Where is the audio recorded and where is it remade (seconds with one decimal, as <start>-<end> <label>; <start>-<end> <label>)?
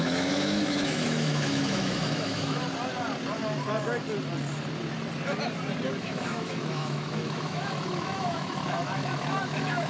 0.0-2.6 remade; 2.6-6.0 recorded; 6.0-9.9 remade